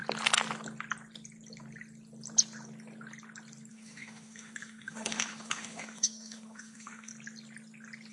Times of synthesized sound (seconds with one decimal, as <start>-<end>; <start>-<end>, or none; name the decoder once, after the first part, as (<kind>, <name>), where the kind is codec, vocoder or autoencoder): 3.7-7.1 (autoencoder, DAC-VAE)